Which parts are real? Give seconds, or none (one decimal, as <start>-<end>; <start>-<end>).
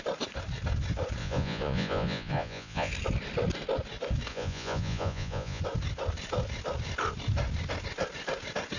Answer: 0.0-1.2; 2.9-4.3; 5.6-8.8